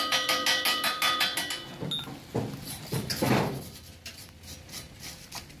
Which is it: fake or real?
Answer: real